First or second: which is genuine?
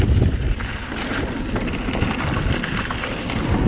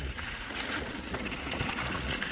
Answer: first